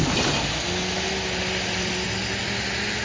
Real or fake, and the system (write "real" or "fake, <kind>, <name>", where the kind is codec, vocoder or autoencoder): real